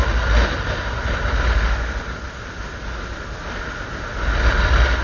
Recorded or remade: recorded